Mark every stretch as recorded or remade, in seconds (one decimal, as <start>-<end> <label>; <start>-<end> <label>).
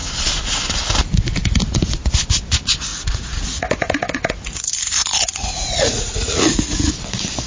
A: 0.0-2.9 recorded; 2.9-6.9 remade; 6.9-7.5 recorded